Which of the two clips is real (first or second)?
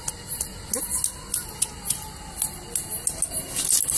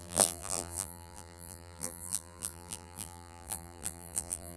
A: first